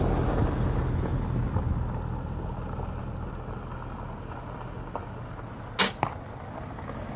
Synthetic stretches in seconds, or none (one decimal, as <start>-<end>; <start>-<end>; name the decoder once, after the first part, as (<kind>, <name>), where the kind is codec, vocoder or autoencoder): none